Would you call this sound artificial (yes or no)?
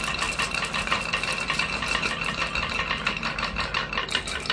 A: no